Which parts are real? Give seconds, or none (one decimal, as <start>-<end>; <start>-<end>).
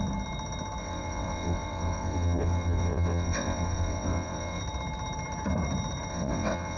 0.0-0.8; 4.6-6.1